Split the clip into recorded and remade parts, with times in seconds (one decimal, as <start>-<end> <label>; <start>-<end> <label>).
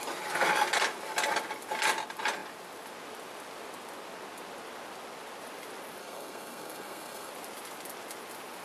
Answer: 0.0-6.0 recorded; 6.0-7.3 remade; 7.3-8.6 recorded